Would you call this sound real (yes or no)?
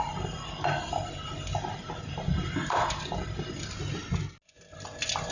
yes